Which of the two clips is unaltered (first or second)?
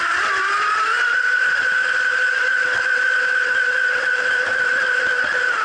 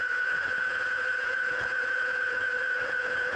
first